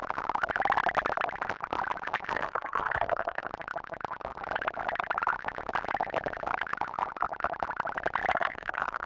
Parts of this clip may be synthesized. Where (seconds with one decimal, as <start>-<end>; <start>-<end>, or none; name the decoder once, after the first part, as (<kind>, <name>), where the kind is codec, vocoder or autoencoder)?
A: 2.3-3.5 (codec, SNAC); 8.3-9.1